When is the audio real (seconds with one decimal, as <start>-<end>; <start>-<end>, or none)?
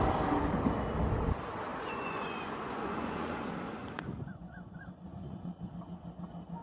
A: 0.0-1.7; 5.7-6.6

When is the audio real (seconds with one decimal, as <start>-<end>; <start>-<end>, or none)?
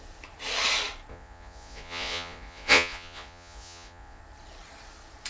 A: 0.0-1.1; 4.2-5.3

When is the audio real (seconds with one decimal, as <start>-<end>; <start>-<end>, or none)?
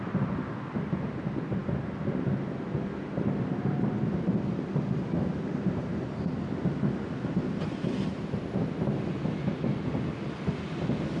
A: 0.0-11.2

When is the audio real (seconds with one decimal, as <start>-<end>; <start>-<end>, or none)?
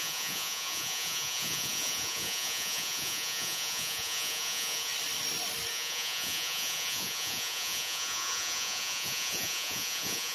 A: 4.9-5.7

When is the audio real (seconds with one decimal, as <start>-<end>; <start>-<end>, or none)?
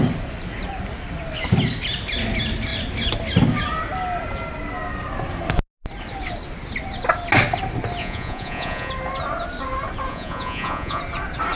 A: 0.0-8.0; 8.9-10.1; 11.0-11.6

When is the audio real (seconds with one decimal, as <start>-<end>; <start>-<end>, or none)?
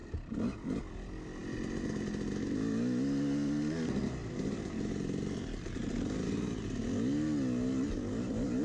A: 0.0-8.6